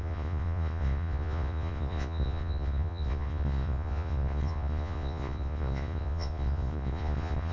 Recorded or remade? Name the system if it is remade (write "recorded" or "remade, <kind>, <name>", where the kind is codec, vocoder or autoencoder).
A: remade, vocoder, Vocos